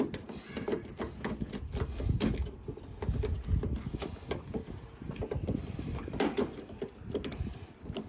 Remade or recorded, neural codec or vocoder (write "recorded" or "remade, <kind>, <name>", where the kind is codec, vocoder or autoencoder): recorded